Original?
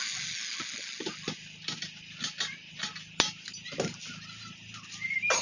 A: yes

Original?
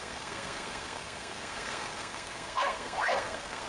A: no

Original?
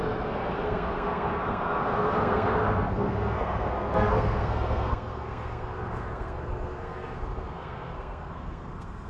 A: no